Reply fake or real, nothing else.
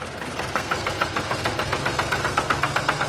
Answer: fake